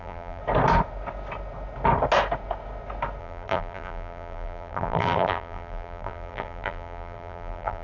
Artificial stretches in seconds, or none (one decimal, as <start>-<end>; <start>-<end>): 0.0-0.4; 3.2-7.8